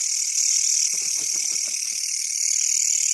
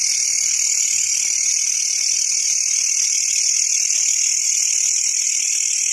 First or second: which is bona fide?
first